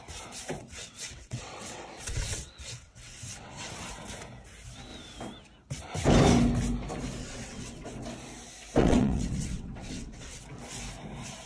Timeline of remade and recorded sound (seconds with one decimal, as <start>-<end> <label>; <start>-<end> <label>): 0.0-0.6 recorded; 0.6-3.7 remade; 3.7-7.2 recorded; 7.2-8.0 remade; 8.0-8.8 recorded; 8.8-10.4 remade; 10.4-11.5 recorded